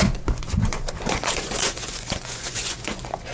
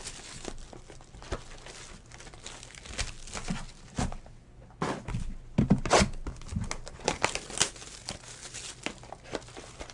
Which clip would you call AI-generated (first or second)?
first